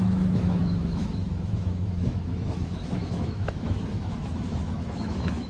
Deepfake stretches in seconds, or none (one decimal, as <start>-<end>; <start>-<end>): 0.0-5.5